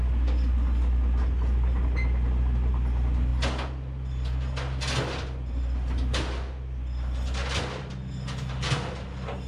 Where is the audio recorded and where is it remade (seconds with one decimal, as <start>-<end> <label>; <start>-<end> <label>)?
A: 0.0-9.5 recorded